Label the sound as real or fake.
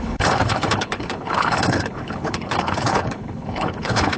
fake